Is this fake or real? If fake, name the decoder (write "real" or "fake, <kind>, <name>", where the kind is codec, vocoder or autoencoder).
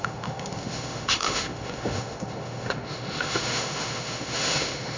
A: fake, autoencoder, DAC-VAE